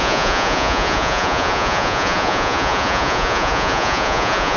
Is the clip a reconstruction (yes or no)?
yes